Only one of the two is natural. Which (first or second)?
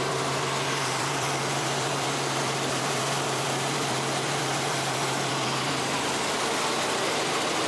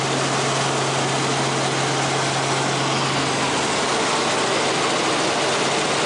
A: second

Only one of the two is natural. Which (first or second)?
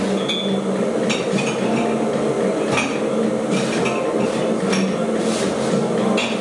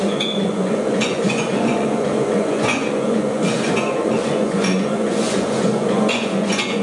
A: first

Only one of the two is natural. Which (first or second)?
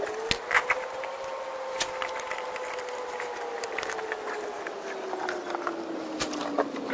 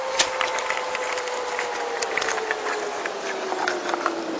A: first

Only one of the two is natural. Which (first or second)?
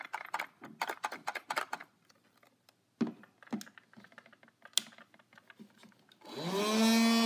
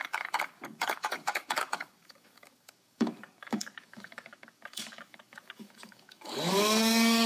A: first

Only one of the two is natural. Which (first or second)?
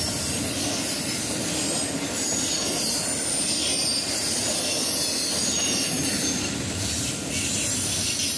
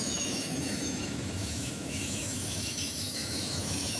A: first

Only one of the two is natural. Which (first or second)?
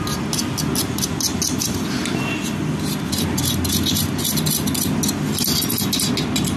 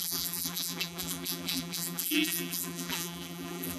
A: first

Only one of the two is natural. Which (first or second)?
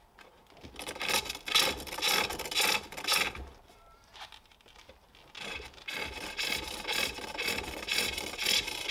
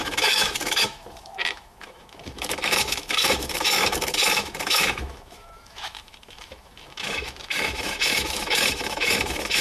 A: first